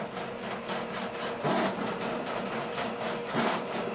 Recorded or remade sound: recorded